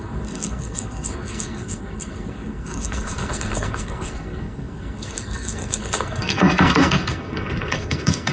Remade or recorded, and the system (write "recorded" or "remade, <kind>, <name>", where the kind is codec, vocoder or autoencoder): remade, codec, SNAC